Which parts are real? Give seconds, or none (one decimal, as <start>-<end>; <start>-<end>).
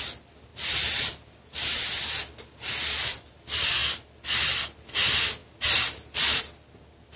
0.0-7.2